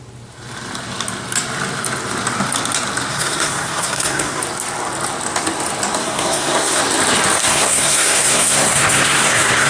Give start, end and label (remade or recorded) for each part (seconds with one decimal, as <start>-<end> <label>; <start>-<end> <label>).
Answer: 0.0-3.1 recorded; 3.1-4.4 remade; 4.4-6.0 recorded; 6.0-6.8 remade; 6.8-7.4 recorded; 7.4-9.7 remade